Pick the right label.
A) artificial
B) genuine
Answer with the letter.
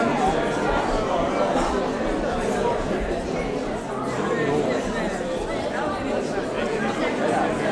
B